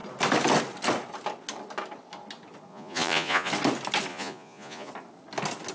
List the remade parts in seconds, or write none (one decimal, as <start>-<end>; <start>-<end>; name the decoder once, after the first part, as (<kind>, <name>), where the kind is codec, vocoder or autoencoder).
2.7-3.5 (vocoder, Vocos); 4.1-4.9